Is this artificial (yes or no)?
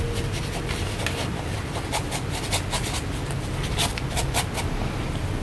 no